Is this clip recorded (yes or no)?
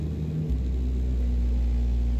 yes